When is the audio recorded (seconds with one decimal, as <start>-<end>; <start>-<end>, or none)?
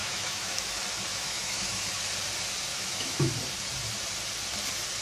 0.7-1.1; 1.8-2.7; 3.3-5.0